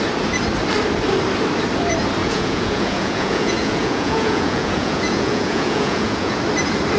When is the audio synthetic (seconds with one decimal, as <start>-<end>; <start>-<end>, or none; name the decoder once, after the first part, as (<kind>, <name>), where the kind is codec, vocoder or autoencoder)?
2.2-6.4 (vocoder, Vocos)